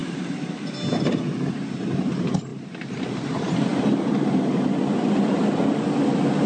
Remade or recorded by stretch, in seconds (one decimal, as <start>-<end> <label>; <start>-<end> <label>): 0.0-6.5 recorded